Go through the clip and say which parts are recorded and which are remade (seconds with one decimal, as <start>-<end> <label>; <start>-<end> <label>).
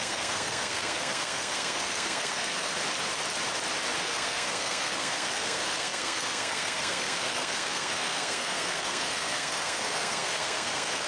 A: 0.0-2.7 remade; 2.7-4.0 recorded; 4.0-11.1 remade